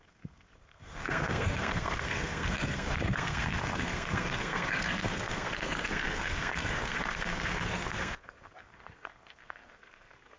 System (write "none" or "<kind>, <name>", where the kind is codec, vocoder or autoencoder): codec, SNAC